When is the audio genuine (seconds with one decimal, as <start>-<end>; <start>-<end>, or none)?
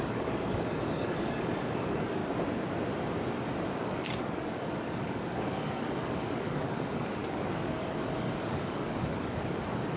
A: 2.2-3.8